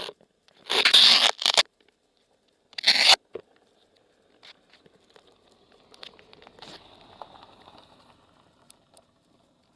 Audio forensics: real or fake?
real